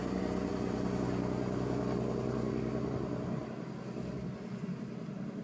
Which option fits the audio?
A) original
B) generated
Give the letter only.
A